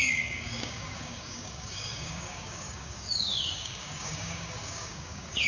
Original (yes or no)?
no